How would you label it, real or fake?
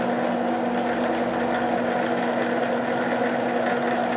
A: real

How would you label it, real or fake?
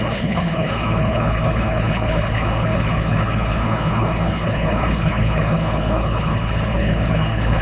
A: fake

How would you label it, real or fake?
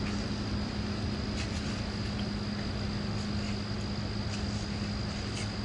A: real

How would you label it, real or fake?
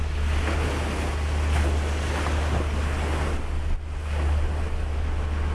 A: real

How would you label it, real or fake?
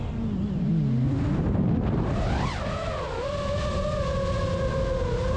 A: real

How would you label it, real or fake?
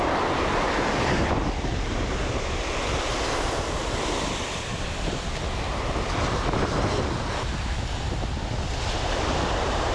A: real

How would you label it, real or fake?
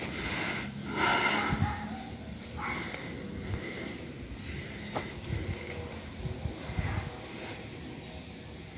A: real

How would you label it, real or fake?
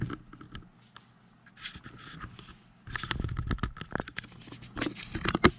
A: real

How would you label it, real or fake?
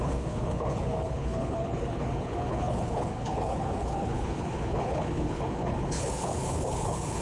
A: fake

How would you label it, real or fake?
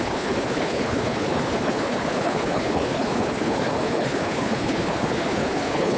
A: fake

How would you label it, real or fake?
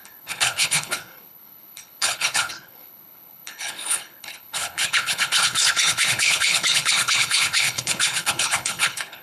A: fake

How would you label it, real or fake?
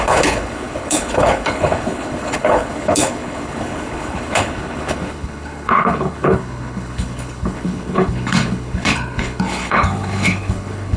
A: fake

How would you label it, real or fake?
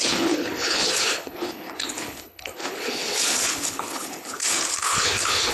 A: fake